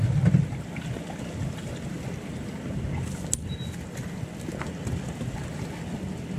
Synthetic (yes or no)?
no